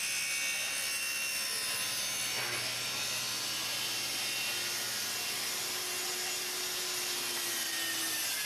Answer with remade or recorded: recorded